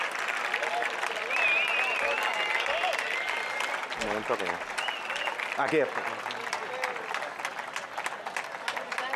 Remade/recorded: recorded